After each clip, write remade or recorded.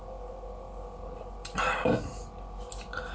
recorded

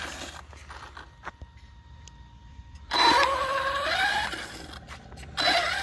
recorded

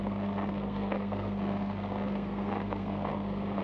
remade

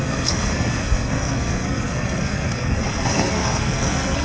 remade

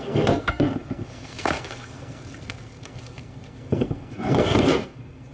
remade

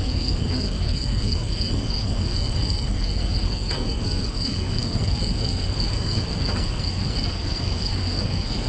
remade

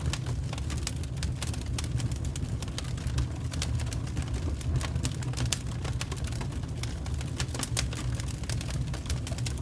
recorded